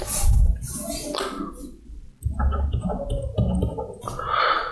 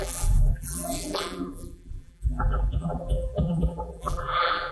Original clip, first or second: first